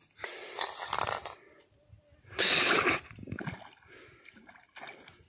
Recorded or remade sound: recorded